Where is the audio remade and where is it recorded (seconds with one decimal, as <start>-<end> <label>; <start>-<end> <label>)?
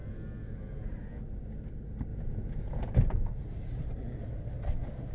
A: 0.0-2.1 recorded; 2.1-3.3 remade; 3.3-5.1 recorded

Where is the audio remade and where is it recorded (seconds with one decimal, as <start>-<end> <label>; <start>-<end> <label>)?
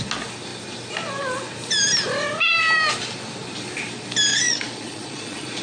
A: 0.0-4.3 recorded; 4.3-5.6 remade